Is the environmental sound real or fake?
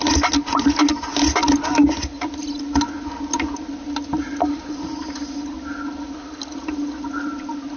real